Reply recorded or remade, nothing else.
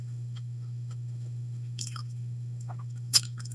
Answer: remade